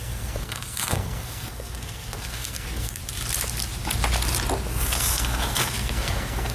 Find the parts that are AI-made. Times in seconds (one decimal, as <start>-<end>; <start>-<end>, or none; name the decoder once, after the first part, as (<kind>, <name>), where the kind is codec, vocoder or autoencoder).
0.0-3.0 (codec, SNAC); 4.7-6.5